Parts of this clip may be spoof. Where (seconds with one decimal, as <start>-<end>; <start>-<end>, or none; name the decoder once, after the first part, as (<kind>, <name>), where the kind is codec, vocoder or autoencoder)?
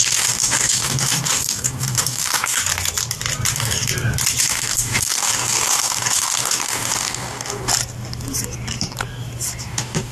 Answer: 0.0-2.6 (codec, DAC); 3.5-3.9; 4.4-7.7; 9.6-10.1